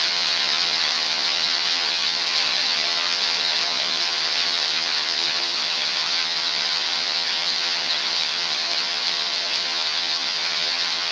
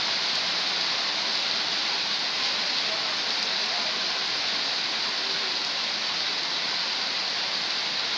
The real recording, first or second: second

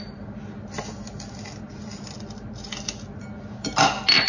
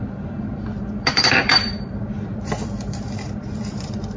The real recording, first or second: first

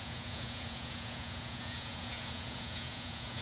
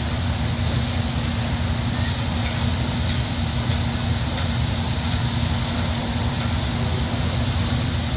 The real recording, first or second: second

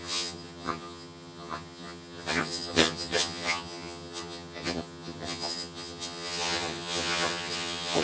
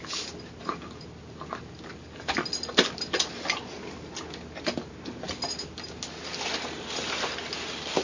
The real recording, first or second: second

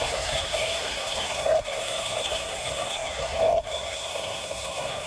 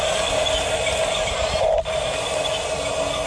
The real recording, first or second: second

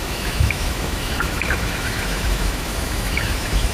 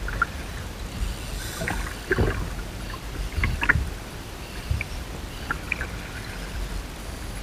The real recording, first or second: second